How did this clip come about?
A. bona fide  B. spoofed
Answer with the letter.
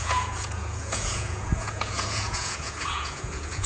B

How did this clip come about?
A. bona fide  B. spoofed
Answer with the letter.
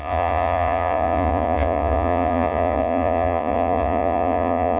B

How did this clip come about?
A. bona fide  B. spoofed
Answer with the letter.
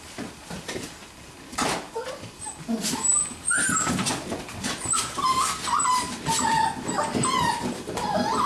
A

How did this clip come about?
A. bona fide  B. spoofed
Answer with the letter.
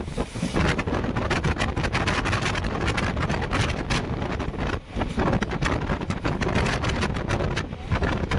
A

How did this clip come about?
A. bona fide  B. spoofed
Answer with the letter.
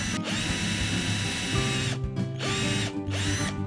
A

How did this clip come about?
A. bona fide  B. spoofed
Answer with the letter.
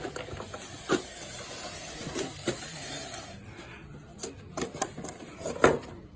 A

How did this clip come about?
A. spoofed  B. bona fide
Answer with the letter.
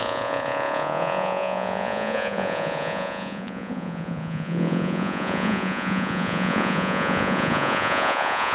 A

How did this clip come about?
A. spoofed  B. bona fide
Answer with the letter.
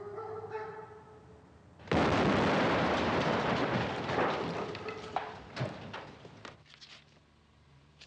B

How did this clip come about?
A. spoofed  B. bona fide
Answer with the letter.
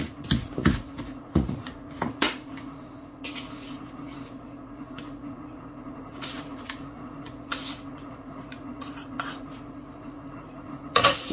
A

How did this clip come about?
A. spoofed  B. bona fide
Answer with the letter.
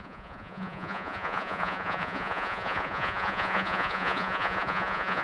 A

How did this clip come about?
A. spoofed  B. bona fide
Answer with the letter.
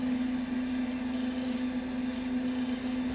B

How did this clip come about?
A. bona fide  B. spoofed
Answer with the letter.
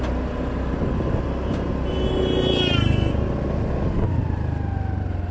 A